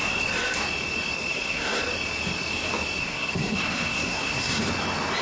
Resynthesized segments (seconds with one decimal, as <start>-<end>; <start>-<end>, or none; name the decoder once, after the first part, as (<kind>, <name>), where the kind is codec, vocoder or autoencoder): 1.3-1.8 (codec, SNAC); 3.0-4.6